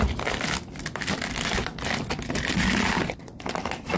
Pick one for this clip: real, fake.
real